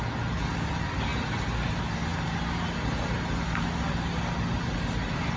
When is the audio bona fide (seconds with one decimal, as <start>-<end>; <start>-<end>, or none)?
0.0-5.4